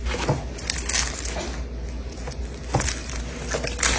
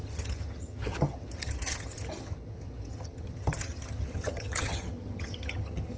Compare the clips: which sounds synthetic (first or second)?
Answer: second